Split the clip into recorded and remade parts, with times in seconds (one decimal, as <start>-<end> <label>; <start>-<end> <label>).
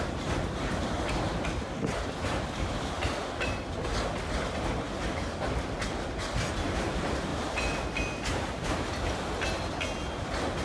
0.0-10.6 recorded